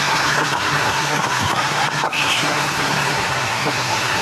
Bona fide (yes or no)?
no